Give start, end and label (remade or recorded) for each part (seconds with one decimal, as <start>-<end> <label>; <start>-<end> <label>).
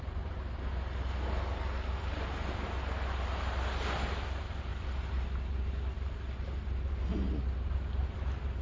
0.0-8.6 recorded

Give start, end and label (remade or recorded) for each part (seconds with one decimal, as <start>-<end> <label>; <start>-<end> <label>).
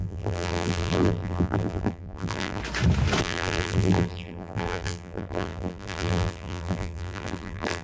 0.0-2.6 remade; 2.6-3.2 recorded; 3.2-7.8 remade